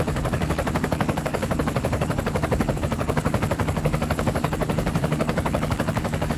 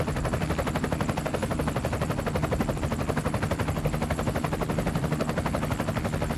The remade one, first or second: first